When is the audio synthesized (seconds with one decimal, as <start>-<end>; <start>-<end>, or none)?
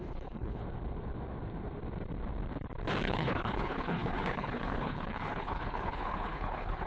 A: 0.0-0.6; 3.0-6.9